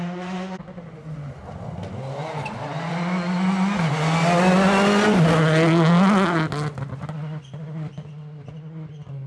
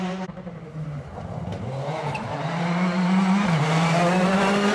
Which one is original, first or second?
first